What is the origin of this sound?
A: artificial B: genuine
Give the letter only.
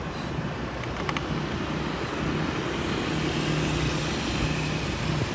B